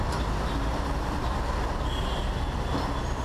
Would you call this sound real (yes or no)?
yes